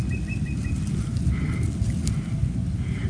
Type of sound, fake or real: real